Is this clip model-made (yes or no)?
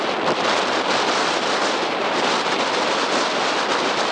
no